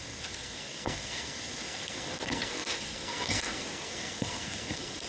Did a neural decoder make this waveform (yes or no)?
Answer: yes